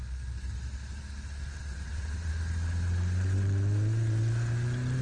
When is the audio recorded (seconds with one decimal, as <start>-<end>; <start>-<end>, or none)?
0.0-1.6; 2.3-5.0